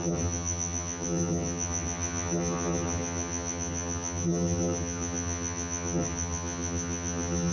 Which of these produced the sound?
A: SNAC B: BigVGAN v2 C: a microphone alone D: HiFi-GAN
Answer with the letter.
D